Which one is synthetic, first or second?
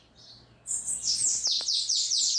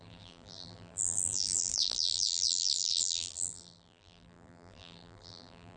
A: second